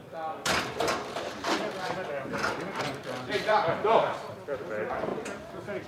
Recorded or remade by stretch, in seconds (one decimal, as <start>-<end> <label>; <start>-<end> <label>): 0.0-2.9 remade; 2.9-3.5 recorded; 3.5-4.6 remade; 4.6-5.1 recorded; 5.1-5.9 remade